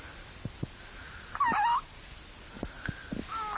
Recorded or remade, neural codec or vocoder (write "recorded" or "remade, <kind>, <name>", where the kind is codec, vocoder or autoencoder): recorded